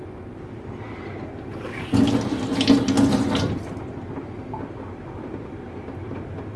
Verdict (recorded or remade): recorded